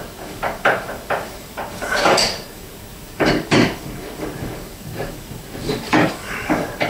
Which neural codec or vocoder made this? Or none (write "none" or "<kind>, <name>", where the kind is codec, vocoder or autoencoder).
codec, DAC